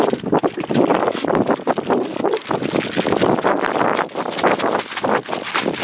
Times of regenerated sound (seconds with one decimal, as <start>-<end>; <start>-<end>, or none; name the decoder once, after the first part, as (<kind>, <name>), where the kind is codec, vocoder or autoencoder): none